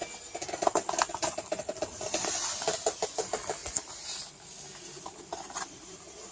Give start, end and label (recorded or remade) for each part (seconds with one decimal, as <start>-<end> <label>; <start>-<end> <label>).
0.0-6.3 recorded